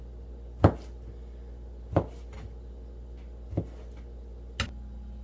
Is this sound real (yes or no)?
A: yes